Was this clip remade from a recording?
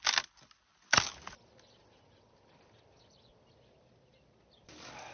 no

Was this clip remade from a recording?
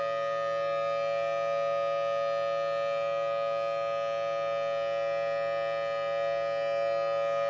no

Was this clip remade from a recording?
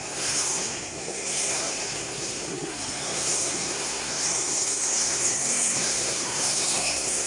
yes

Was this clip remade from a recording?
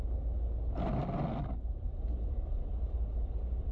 no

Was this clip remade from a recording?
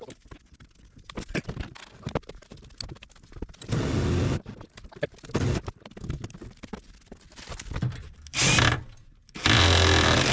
no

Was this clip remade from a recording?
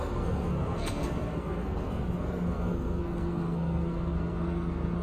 yes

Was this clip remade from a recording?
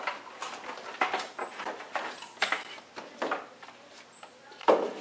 no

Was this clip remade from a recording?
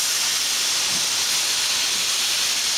no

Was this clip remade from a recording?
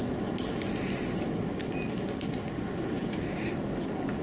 no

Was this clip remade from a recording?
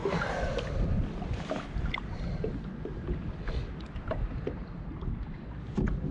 no